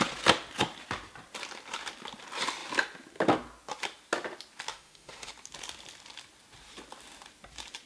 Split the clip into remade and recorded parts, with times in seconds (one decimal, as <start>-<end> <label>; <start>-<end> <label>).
0.0-4.7 recorded; 4.7-5.3 remade; 5.3-7.9 recorded